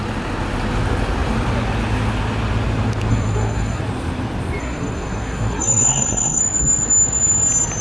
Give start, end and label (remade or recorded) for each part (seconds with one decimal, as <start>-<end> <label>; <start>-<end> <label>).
0.0-3.1 recorded; 3.1-3.8 remade; 3.8-4.6 recorded; 4.6-6.4 remade; 6.4-7.8 recorded